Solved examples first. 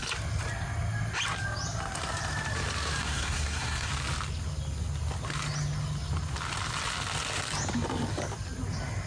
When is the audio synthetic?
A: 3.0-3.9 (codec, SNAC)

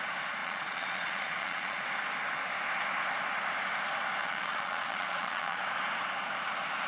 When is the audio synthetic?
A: 0.4-1.9 (vocoder, Vocos); 4.2-5.6

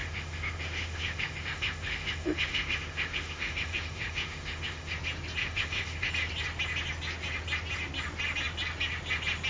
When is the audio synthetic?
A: 0.0-4.9 (autoencoder, DAC-VAE); 5.4-6.1

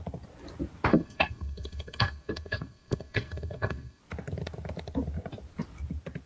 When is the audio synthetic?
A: 0.9-4.0 (codec, SNAC)

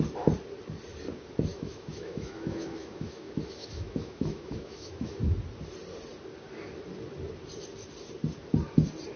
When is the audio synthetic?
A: 1.5-5.2 (autoencoder, DAC-VAE)

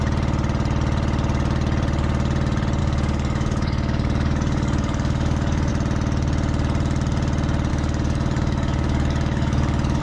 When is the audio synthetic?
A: 2.8-5.7 (codec, DAC); 7.7-10.0